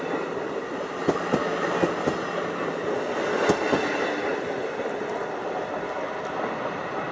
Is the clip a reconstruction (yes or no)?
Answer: no